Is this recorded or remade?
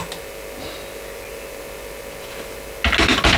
recorded